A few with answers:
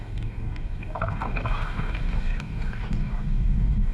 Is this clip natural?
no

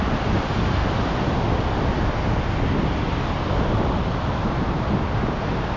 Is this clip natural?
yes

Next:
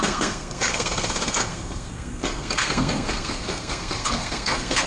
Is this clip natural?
no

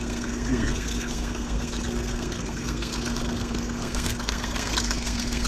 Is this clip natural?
no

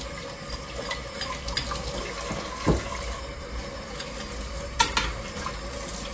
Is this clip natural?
yes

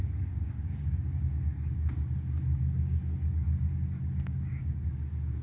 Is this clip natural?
no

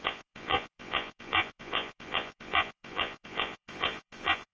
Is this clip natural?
no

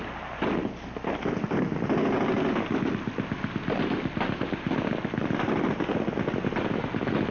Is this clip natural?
yes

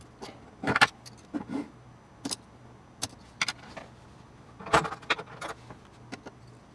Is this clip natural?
yes